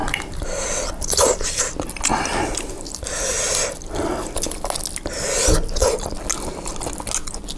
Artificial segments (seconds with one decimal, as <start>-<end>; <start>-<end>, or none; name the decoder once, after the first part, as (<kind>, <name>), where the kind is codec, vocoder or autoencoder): 0.0-1.6 (vocoder, BigVGAN v2)